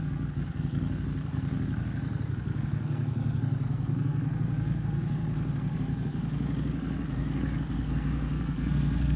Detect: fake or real fake